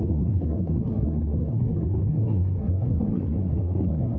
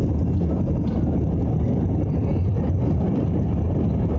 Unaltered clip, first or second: second